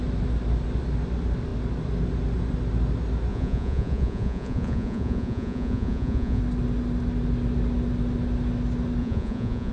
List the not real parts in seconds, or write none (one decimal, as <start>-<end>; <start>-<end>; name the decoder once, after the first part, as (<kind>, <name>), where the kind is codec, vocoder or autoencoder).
3.3-6.4 (vocoder, Vocos); 9.0-9.7